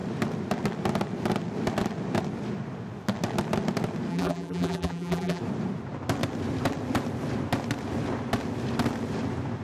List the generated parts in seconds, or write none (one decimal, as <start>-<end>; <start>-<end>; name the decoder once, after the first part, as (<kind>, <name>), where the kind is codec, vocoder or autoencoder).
4.1-5.4 (vocoder, BigVGAN v2)